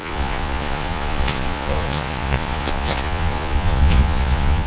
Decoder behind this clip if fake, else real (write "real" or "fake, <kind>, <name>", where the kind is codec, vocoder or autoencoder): fake, vocoder, Vocos